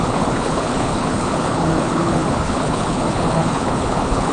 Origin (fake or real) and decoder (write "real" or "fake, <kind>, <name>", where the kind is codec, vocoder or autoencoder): fake, codec, HILCodec